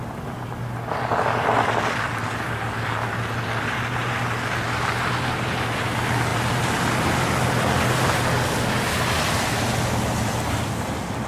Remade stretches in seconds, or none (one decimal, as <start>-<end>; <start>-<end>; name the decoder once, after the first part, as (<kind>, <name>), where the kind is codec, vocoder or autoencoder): none